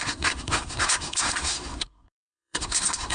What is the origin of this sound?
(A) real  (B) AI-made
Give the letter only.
B